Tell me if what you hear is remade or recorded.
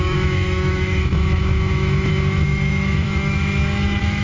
remade